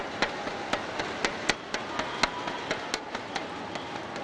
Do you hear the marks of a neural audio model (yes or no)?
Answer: no